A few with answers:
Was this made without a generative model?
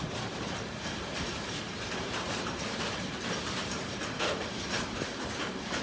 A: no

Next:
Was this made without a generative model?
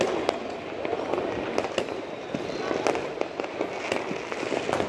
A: yes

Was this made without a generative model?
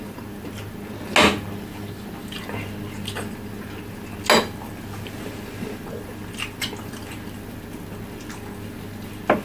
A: yes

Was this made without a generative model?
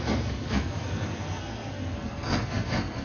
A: no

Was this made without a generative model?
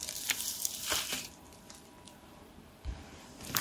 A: no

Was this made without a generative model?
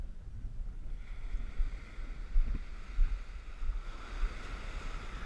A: yes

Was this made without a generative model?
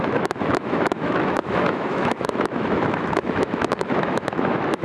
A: no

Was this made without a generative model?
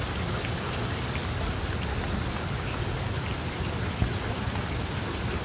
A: yes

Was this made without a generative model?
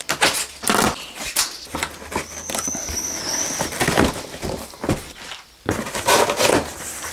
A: yes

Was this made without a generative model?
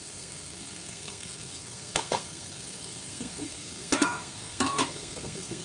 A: no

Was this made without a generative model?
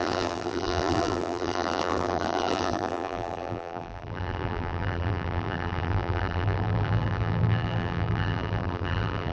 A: no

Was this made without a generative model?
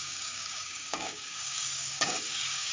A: no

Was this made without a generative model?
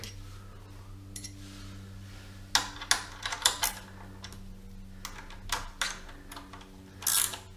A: yes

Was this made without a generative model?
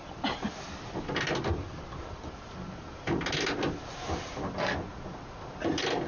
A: yes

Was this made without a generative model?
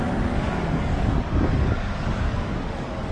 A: no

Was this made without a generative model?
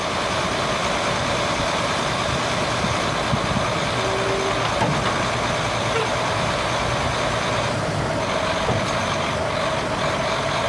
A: yes